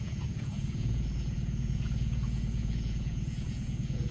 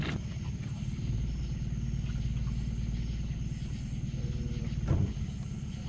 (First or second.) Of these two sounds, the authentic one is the second